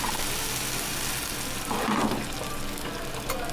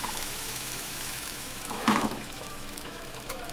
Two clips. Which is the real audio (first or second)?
first